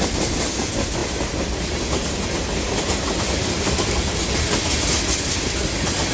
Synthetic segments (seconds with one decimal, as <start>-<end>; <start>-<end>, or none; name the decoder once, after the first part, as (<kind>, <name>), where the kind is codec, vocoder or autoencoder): none